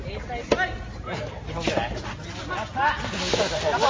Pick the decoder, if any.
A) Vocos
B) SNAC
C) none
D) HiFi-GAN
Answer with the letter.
C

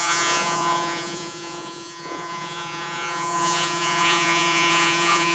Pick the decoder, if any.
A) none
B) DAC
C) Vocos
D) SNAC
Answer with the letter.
C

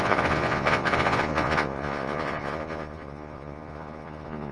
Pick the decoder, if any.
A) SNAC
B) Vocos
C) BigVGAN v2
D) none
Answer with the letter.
B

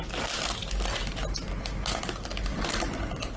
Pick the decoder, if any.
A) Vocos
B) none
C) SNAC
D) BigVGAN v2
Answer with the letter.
B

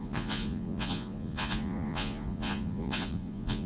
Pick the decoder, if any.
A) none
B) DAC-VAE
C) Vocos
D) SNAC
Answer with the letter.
C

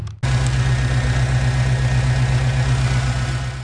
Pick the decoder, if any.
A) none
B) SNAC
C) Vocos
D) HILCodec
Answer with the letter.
A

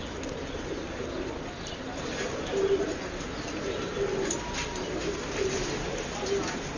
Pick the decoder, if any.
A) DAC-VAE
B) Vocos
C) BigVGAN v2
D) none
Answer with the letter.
D